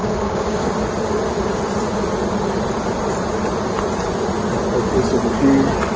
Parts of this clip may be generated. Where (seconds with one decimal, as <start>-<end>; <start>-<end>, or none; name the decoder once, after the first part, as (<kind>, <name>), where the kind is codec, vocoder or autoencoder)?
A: 0.0-0.7 (codec, DAC)